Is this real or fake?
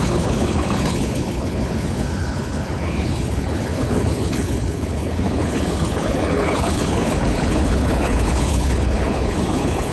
fake